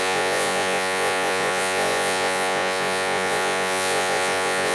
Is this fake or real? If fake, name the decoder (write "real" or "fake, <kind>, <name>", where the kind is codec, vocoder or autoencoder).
fake, vocoder, Vocos